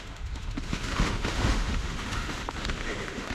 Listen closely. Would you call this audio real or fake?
fake